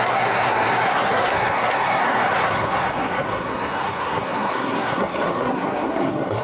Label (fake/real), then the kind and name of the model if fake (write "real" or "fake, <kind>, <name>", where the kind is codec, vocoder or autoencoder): fake, codec, SNAC